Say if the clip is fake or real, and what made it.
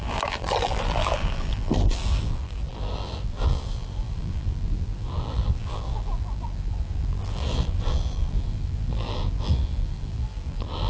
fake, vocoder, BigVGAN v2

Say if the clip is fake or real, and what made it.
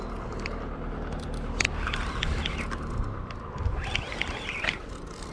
real